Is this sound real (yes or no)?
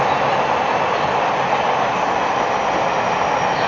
yes